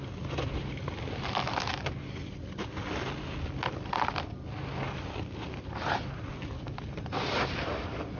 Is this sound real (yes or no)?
yes